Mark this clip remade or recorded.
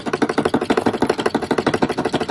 recorded